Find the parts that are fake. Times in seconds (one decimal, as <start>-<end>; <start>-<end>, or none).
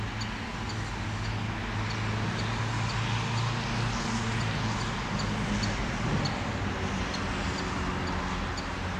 none